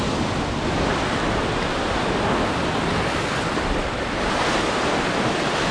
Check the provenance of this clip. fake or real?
real